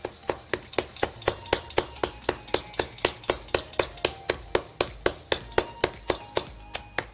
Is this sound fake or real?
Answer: real